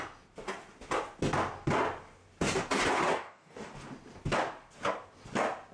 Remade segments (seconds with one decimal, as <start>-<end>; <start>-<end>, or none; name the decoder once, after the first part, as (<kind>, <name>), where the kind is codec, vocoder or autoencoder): 3.1-3.7 (codec, DAC)